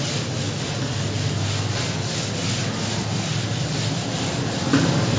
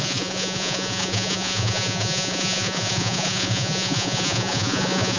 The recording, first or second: first